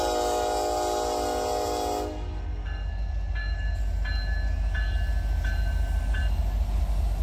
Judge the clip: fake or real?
real